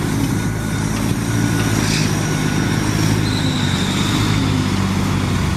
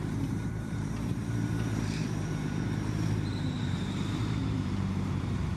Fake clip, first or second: second